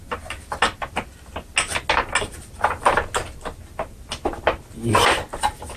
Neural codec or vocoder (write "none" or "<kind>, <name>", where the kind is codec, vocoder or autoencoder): none